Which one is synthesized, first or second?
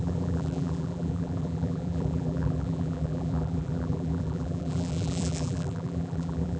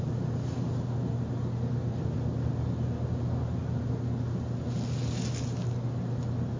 first